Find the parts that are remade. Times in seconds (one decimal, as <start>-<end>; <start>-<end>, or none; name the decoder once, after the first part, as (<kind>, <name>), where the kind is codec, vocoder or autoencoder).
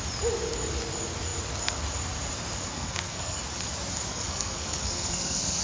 2.7-3.4 (codec, SNAC); 4.1-5.6